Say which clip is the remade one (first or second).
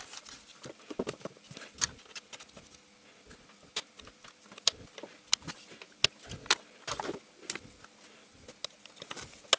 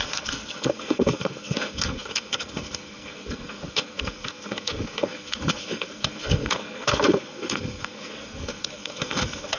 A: second